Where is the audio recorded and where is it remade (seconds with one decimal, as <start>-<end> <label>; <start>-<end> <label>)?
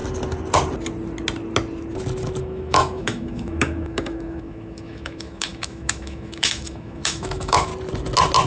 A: 0.0-2.4 recorded; 2.4-7.7 remade; 7.7-8.5 recorded